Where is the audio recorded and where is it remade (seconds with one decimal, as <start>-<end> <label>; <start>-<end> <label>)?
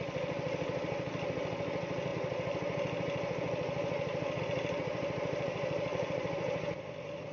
0.0-7.3 remade